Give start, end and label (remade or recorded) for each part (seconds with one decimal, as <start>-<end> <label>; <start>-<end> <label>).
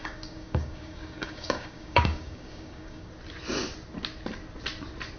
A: 0.0-3.1 remade; 3.1-5.2 recorded